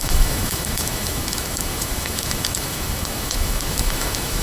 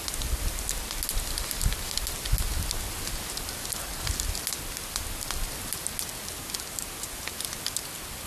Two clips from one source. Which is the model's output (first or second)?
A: first